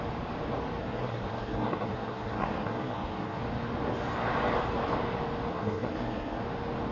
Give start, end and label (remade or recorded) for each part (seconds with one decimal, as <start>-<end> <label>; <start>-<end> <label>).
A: 0.0-0.8 recorded; 0.8-3.4 remade; 3.4-5.5 recorded; 5.5-6.4 remade; 6.4-6.9 recorded